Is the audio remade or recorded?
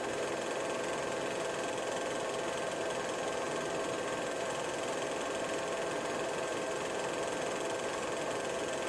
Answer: recorded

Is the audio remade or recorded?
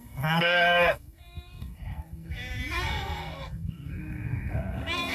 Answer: remade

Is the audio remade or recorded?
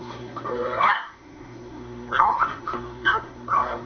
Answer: remade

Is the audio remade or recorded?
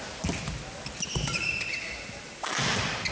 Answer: recorded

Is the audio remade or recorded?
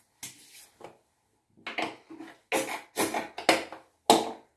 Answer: recorded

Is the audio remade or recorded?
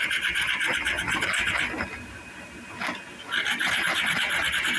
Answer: recorded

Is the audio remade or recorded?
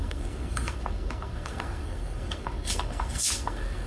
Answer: remade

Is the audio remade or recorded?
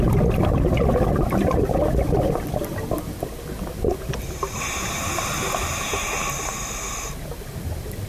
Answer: recorded